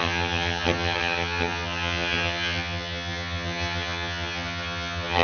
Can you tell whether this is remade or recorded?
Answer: remade